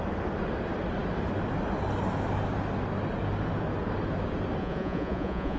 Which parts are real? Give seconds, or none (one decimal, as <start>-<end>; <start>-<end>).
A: 0.0-4.6